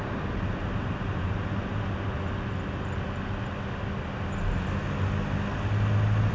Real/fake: real